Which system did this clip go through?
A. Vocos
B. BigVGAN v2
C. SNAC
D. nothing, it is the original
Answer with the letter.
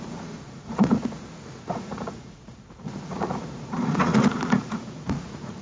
A